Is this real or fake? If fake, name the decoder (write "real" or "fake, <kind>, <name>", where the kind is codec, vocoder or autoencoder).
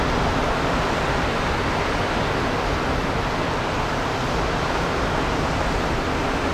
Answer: real